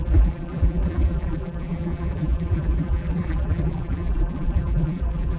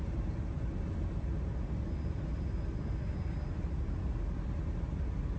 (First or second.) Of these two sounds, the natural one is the second